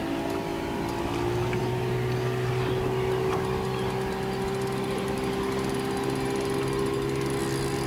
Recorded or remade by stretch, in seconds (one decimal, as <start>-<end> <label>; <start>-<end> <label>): 0.0-7.9 recorded